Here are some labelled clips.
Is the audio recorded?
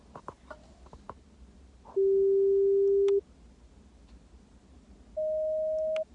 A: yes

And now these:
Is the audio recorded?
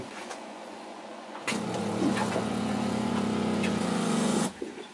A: no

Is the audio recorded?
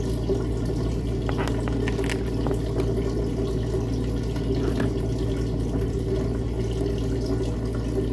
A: yes